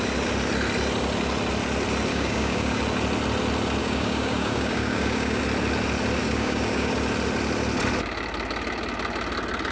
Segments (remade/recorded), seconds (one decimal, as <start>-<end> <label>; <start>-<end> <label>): 0.0-2.1 recorded; 2.1-2.8 remade; 2.8-3.8 recorded; 3.8-5.4 remade; 5.4-6.2 recorded; 6.2-6.9 remade; 6.9-9.7 recorded